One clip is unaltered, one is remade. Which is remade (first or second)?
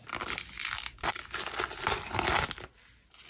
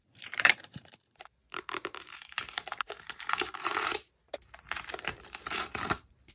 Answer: second